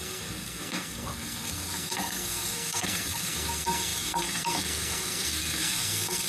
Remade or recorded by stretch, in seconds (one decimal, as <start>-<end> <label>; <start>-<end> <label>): 0.0-6.3 remade